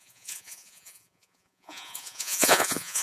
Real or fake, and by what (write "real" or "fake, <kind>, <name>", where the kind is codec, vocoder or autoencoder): fake, vocoder, Vocos